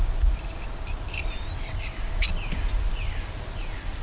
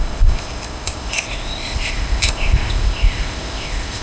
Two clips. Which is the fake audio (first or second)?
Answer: second